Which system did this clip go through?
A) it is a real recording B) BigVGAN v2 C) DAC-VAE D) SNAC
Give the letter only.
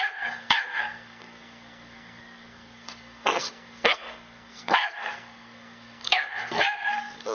D